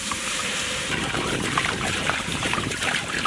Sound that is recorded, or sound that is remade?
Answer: remade